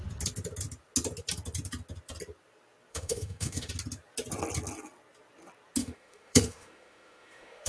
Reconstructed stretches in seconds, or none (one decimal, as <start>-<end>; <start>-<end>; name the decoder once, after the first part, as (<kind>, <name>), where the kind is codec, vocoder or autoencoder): 2.9-3.7 (autoencoder, DAC-VAE); 5.8-7.7